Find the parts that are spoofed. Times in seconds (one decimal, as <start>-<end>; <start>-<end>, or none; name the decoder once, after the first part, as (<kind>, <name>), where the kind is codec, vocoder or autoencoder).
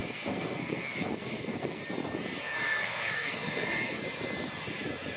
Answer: 0.0-1.8 (codec, SNAC); 2.4-4.0